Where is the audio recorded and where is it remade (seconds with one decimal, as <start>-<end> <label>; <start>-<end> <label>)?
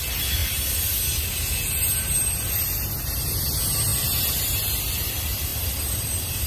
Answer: 0.0-6.5 recorded